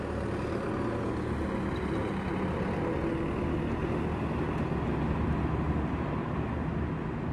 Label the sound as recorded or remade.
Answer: recorded